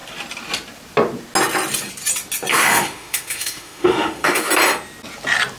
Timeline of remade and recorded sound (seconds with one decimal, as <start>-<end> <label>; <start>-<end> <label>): 0.0-2.5 recorded; 2.5-4.5 remade; 4.5-5.6 recorded